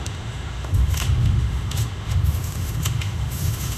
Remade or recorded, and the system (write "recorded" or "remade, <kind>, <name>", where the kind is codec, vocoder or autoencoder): remade, autoencoder, DAC-VAE